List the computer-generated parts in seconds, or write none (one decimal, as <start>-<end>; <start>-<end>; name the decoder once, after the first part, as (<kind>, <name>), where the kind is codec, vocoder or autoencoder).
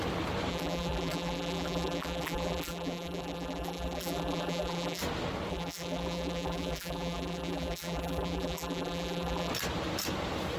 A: 0.5-5.0 (vocoder, BigVGAN v2); 5.5-9.5